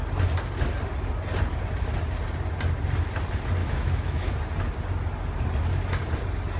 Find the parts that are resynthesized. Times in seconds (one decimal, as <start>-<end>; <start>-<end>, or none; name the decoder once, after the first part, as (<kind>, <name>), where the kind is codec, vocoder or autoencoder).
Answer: 3.6-4.3 (autoencoder, DAC-VAE)